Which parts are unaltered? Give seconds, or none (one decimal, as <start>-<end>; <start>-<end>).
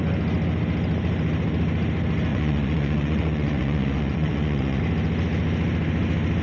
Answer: 0.0-2.3; 4.8-6.4